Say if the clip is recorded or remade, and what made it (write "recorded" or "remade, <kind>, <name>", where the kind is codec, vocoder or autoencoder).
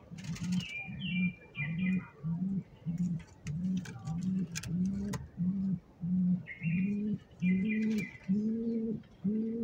recorded